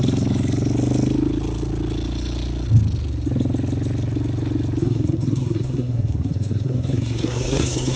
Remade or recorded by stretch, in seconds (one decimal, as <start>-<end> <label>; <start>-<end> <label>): 0.0-4.8 recorded; 4.8-8.0 remade